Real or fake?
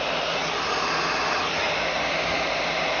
real